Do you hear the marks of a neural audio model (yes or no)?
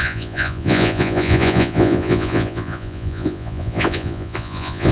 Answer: yes